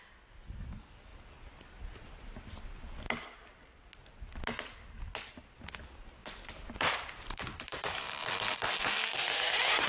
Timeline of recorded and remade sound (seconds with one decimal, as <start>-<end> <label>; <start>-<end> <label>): 0.0-6.2 recorded; 6.2-8.2 remade; 8.2-9.9 recorded